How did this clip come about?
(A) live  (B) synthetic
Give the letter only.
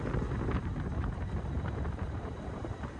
B